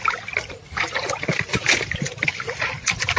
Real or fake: real